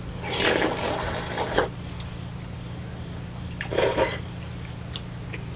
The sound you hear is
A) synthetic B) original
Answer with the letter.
B